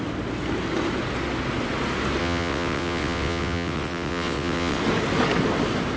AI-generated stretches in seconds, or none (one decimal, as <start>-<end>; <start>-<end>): 2.2-4.8